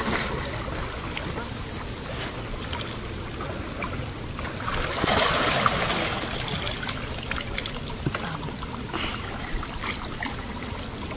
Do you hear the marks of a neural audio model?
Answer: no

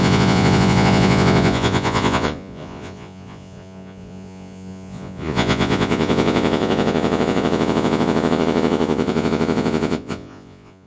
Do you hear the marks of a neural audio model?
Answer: yes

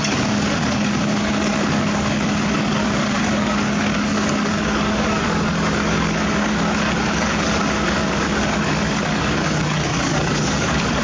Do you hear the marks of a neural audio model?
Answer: yes